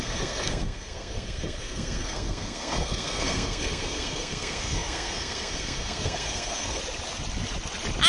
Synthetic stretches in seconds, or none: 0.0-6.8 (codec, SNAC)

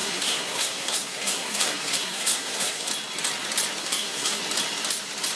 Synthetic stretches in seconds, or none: 0.0-2.9 (codec, SNAC); 3.8-4.4

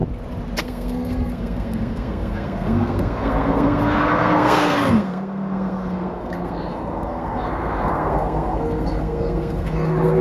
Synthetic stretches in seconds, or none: 0.6-10.2 (codec, SNAC)

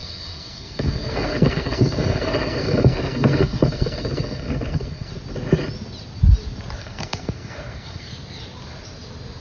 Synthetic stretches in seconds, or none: 0.0-5.1 (codec, SNAC); 6.8-8.1

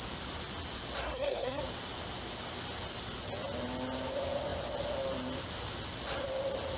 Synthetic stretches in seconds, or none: 1.0-1.6 (codec, SNAC)

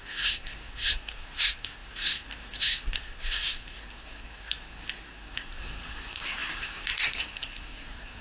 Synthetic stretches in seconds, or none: 0.0-8.2 (codec, SNAC)

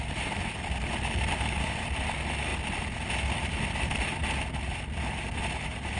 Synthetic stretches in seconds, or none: none

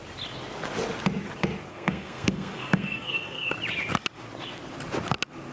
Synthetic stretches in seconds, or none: 1.7-3.5 (codec, SNAC)